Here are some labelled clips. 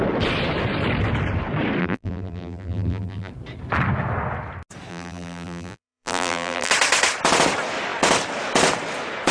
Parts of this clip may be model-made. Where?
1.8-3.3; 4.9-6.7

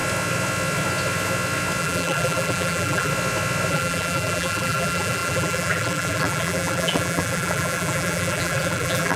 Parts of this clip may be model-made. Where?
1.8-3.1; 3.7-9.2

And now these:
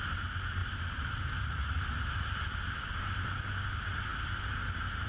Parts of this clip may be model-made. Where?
none

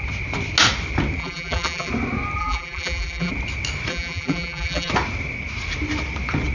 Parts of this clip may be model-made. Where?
1.2-1.9; 2.4-3.3; 3.9-4.9

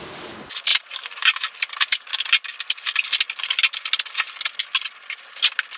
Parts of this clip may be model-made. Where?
0.7-1.6

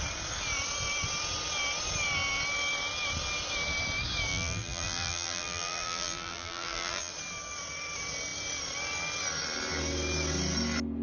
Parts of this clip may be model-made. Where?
4.3-7.1

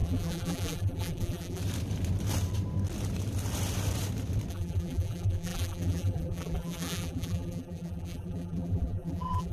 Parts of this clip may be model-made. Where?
0.0-1.6; 4.5-9.5